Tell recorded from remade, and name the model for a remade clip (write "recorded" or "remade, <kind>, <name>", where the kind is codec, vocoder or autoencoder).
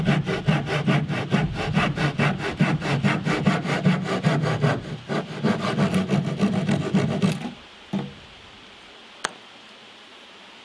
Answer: recorded